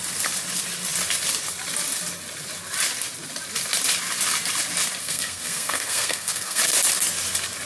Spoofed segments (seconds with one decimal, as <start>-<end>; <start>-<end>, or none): 5.0-6.6